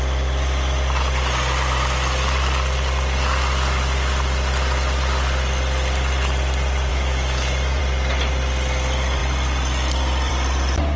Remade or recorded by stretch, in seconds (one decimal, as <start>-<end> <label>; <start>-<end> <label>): 0.0-6.9 recorded; 6.9-7.8 remade; 7.8-11.0 recorded